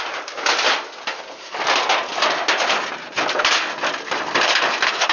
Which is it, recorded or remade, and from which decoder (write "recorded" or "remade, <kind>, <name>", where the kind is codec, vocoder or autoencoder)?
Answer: recorded